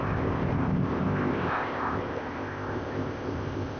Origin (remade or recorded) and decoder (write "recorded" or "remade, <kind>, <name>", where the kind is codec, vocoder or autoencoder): remade, codec, ZipCodec